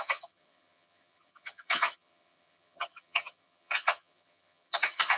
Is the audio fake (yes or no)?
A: yes